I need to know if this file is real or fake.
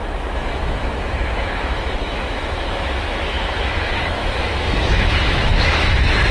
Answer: fake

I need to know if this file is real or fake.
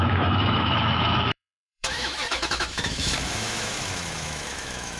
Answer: fake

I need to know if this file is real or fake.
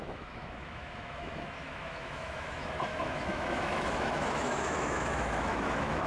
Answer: fake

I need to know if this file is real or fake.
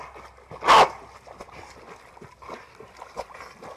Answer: real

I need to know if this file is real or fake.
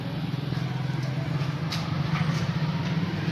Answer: real